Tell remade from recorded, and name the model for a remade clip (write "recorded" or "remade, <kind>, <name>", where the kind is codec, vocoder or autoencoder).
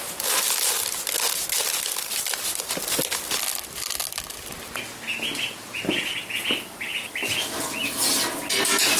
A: recorded